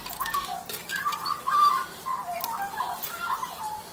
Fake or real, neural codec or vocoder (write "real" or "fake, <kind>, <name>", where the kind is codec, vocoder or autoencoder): real